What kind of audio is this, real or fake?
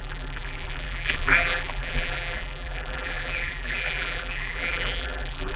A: fake